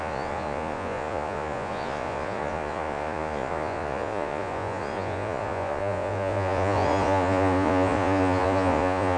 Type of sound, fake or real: fake